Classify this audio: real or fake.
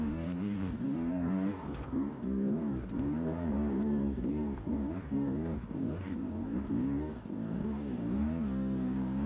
fake